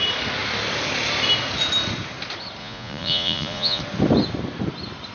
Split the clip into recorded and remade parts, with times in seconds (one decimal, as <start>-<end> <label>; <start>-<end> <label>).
0.0-2.6 recorded; 2.6-3.8 remade; 3.8-5.1 recorded